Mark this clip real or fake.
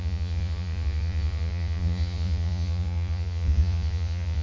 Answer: fake